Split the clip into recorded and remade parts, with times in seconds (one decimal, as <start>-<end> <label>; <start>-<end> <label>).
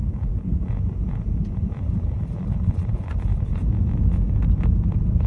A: 0.0-2.2 remade; 2.2-2.9 recorded; 2.9-3.9 remade; 3.9-5.3 recorded